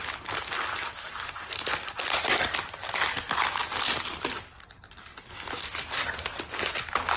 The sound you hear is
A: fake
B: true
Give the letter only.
B